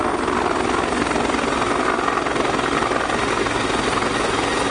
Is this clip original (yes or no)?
yes